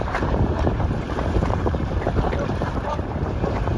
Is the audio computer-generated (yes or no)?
yes